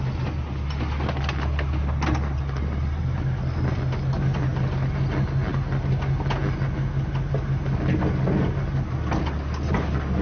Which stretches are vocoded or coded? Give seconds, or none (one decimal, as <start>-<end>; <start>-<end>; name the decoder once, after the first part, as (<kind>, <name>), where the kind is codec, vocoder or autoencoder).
none